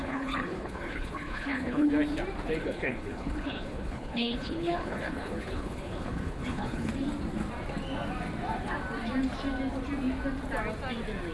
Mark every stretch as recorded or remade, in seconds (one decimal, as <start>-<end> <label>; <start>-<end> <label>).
0.0-1.9 remade; 1.9-2.6 recorded; 2.6-6.9 remade; 6.9-11.3 recorded